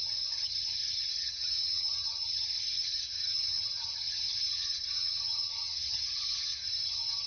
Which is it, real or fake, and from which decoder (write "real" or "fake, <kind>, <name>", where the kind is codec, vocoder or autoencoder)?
fake, vocoder, HiFi-GAN